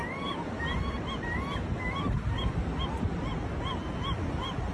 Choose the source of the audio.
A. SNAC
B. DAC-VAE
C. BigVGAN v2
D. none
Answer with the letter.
D